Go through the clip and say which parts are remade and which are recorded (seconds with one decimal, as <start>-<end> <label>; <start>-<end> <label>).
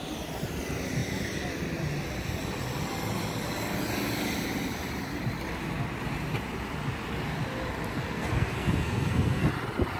0.0-7.9 recorded; 7.9-9.5 remade; 9.5-10.0 recorded